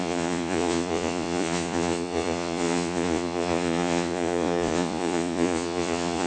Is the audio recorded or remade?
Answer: remade